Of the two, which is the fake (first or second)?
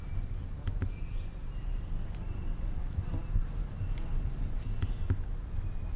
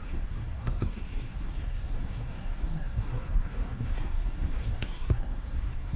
second